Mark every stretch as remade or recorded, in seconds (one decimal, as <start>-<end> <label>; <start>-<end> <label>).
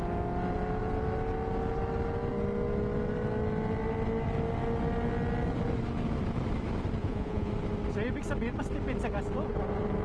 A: 0.0-7.0 recorded; 7.0-7.5 remade; 7.5-10.0 recorded